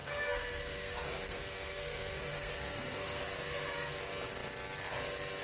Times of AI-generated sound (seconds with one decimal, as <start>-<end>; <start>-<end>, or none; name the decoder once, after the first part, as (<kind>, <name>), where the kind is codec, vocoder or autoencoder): 0.0-3.2 (codec, SNAC)